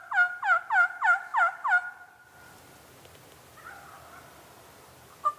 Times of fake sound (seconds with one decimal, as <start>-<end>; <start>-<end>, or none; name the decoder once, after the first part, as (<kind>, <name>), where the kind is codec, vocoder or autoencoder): none